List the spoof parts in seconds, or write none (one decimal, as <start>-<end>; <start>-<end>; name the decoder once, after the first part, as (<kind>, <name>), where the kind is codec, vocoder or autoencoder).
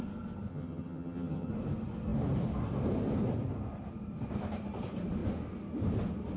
0.5-1.5 (vocoder, HiFi-GAN)